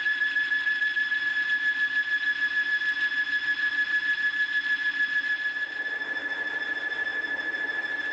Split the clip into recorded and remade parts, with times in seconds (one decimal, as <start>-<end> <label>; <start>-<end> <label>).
0.0-8.1 recorded